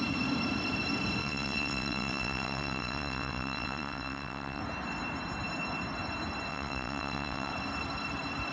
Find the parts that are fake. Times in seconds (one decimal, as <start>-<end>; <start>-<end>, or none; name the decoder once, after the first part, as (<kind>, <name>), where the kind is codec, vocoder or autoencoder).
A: 1.2-4.6 (vocoder, WaveNeXt); 6.5-7.5